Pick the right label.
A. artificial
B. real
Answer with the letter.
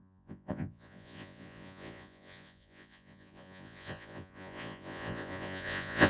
A